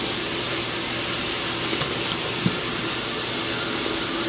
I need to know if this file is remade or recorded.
recorded